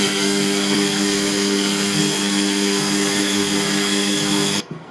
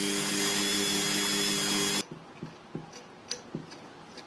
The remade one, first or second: first